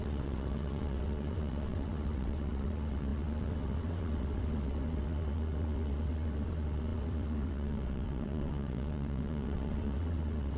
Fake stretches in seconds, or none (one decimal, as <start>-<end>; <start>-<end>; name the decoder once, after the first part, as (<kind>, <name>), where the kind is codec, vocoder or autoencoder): 0.0-10.6 (vocoder, WaveNeXt)